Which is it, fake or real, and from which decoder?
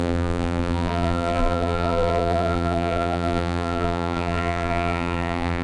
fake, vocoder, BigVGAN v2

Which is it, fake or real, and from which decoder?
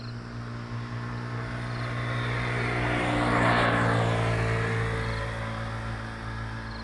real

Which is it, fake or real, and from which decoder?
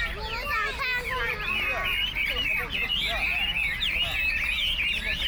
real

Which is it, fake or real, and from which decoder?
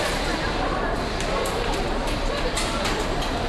fake, vocoder, BigVGAN v2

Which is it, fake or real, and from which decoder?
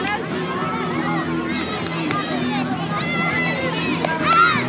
real